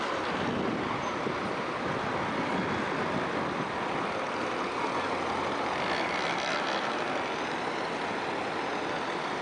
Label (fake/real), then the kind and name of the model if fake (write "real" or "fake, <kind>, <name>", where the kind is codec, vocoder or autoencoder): real